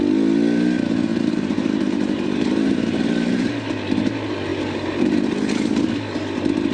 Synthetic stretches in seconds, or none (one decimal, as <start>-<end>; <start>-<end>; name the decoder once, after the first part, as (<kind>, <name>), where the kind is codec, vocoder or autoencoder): 1.1-3.0 (vocoder, BigVGAN v2); 4.5-5.9